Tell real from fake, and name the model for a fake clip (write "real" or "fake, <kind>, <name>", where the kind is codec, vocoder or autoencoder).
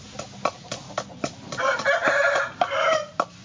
real